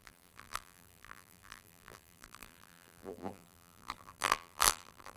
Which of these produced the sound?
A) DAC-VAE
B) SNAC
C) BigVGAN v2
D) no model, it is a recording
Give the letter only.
C